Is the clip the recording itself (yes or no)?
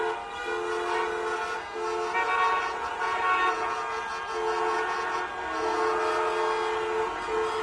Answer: yes